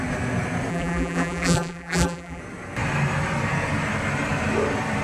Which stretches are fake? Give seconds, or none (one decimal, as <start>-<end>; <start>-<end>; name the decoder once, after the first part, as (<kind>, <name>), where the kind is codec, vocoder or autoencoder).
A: 0.7-2.4 (vocoder, BigVGAN v2)